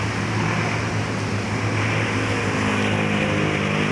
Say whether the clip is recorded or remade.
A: recorded